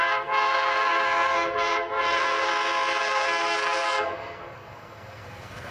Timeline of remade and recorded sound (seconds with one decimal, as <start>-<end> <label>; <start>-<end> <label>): 0.0-2.5 remade; 2.5-3.0 recorded; 3.0-5.7 remade